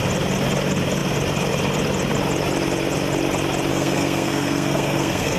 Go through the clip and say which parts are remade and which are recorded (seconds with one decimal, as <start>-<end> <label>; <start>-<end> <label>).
0.0-3.7 recorded; 3.7-5.4 remade